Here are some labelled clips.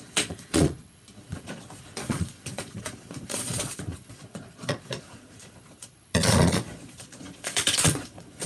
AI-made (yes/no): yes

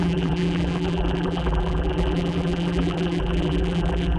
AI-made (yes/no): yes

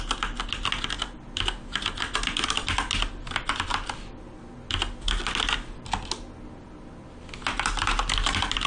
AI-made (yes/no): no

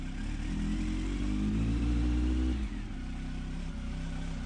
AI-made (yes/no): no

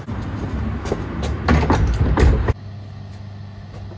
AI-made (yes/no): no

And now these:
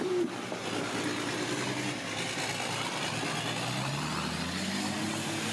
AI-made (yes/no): no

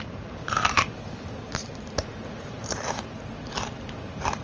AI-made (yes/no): yes